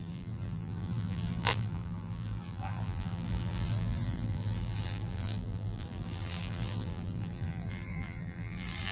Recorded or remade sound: remade